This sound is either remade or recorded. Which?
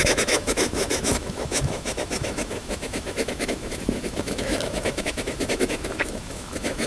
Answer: remade